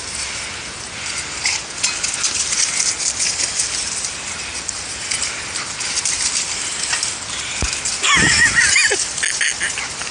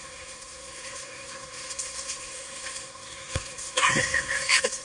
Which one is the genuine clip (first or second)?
first